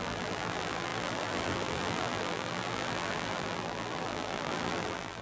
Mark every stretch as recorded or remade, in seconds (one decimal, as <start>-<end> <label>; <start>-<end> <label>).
0.0-5.2 remade